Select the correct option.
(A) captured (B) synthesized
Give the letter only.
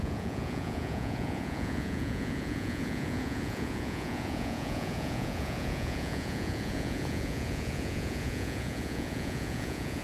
B